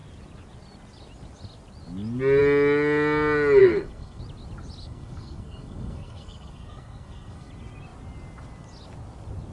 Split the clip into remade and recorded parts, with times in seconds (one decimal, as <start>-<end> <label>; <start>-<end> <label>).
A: 0.0-3.6 recorded; 3.6-4.2 remade; 4.2-4.8 recorded; 4.8-7.5 remade; 7.5-9.5 recorded